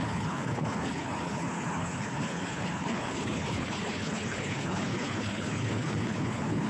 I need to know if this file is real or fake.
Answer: fake